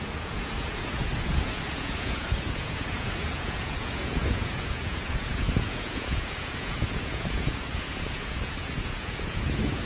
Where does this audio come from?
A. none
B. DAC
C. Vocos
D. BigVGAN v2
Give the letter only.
C